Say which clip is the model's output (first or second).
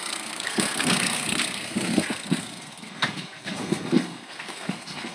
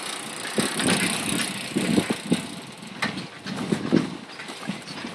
first